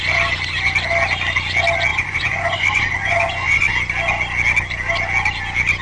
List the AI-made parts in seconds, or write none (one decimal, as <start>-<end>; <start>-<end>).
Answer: 1.9-3.7